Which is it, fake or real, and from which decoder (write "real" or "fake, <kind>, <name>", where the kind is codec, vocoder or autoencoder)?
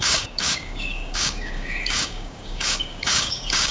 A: fake, codec, DAC